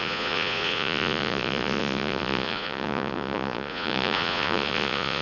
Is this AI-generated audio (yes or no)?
yes